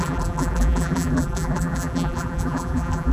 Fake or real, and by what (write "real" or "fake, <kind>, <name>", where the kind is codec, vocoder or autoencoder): fake, vocoder, BigVGAN v2